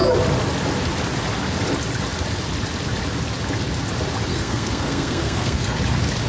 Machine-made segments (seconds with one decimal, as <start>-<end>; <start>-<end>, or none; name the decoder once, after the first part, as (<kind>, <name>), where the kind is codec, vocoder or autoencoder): 4.3-5.8 (codec, SNAC)